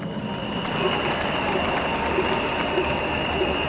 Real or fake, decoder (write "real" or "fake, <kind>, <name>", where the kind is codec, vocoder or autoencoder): real